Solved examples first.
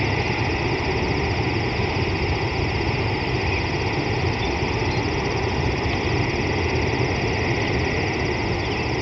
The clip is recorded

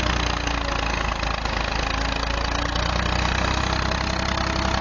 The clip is recorded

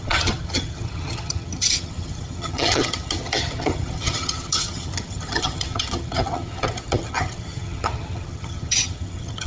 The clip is remade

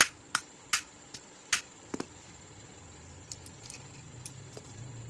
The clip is recorded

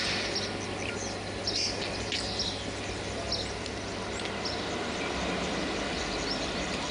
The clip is recorded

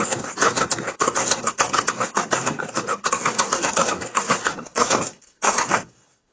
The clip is remade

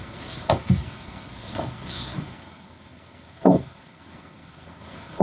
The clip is remade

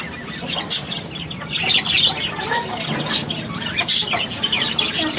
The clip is recorded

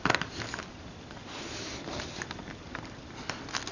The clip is recorded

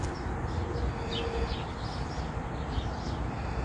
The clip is recorded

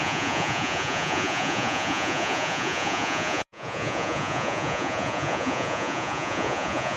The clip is remade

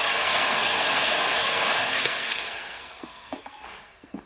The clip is remade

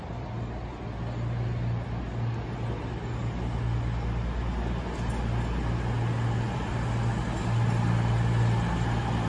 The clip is recorded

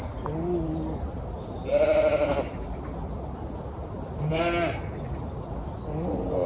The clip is recorded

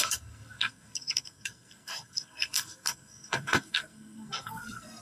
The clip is remade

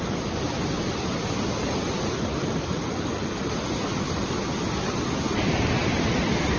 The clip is recorded